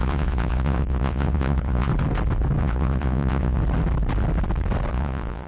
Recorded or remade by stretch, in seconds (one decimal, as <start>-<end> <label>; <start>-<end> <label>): 0.0-1.9 remade; 1.9-2.6 recorded; 2.6-3.6 remade; 3.6-4.9 recorded; 4.9-5.5 remade